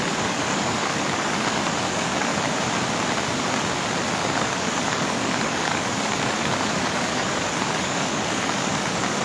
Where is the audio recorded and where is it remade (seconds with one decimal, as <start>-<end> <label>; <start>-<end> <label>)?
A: 0.0-2.3 remade; 2.3-4.1 recorded; 4.1-9.2 remade